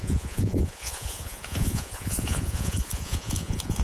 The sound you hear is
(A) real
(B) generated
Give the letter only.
B